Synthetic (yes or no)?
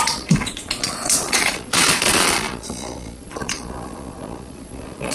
yes